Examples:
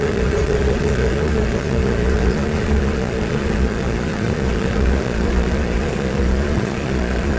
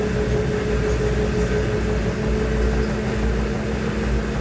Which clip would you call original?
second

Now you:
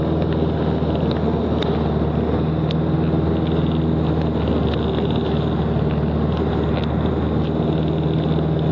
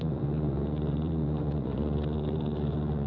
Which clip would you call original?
first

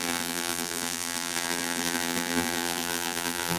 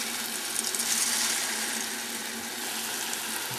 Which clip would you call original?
second